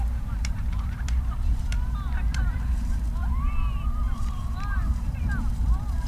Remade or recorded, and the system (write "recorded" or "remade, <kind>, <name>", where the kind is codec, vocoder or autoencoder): remade, vocoder, BigVGAN v2